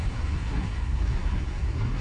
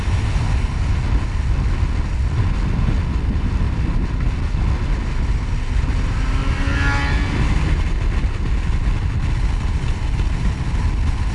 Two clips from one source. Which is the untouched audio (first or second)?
second